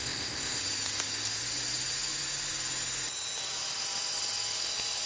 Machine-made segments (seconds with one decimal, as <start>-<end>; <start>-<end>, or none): 0.0-0.6